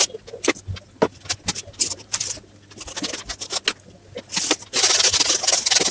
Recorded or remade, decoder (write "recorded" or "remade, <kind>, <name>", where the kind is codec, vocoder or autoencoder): recorded